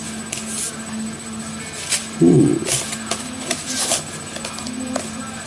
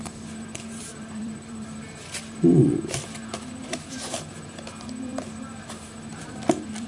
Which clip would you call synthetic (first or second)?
second